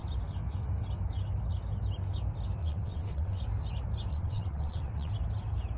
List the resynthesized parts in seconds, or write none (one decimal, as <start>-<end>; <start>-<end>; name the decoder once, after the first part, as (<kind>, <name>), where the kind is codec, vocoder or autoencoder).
2.6-3.4 (vocoder, WaveNeXt); 4.1-5.1

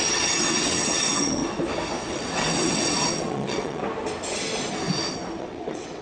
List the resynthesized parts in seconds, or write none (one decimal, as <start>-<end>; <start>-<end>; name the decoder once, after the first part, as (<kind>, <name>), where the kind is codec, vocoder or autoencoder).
0.0-1.4 (vocoder, WaveNeXt); 2.1-3.8; 5.4-6.0

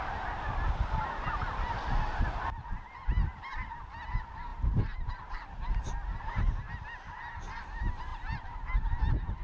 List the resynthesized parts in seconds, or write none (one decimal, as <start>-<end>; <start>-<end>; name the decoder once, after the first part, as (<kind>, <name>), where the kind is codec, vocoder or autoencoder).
none

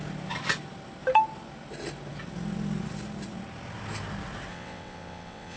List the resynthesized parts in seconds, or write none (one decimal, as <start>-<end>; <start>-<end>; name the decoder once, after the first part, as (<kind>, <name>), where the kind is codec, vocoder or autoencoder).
4.5-5.6 (vocoder, WaveNeXt)

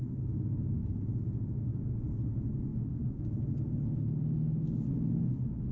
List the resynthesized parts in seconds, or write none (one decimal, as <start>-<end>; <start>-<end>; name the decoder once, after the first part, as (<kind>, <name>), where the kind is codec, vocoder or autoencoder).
none

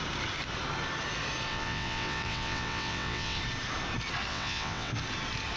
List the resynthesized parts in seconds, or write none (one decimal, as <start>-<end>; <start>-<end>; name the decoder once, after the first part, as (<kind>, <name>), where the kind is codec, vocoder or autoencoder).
1.5-3.4 (vocoder, WaveNeXt); 4.3-4.9

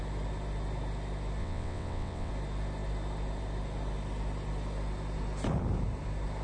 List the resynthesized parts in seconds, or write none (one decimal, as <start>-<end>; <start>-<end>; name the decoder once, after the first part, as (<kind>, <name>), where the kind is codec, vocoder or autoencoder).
1.4-2.3 (vocoder, WaveNeXt)

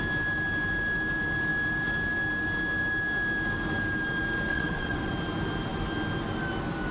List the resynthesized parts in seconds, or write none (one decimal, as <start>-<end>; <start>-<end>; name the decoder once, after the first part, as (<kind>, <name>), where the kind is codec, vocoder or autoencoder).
4.5-5.1 (vocoder, WaveNeXt)